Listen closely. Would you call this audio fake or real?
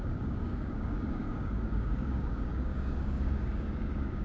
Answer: fake